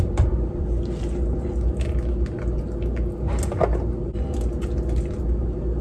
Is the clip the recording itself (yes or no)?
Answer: yes